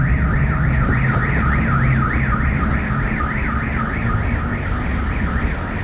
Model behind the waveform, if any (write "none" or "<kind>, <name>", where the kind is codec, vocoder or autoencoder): none